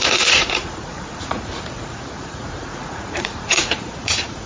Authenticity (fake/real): fake